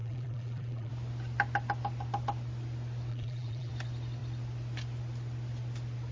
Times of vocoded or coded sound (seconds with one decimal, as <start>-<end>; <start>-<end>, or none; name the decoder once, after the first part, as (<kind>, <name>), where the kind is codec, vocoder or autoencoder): 0.0-0.9 (vocoder, BigVGAN v2); 3.1-3.7